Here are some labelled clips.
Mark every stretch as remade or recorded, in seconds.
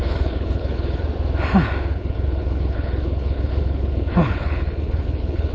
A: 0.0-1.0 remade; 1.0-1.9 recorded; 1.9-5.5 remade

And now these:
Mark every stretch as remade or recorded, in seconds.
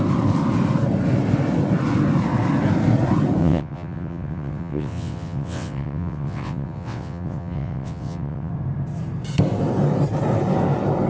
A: 0.0-3.4 recorded; 3.4-8.5 remade; 8.5-11.1 recorded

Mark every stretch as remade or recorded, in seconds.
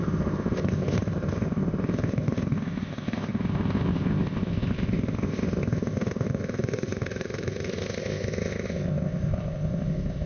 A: 0.0-10.3 remade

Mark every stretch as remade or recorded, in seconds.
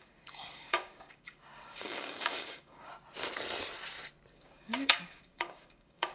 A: 0.0-2.9 remade; 2.9-4.3 recorded; 4.3-6.1 remade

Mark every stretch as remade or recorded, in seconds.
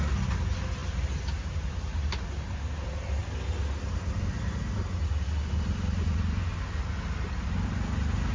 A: 0.0-8.3 recorded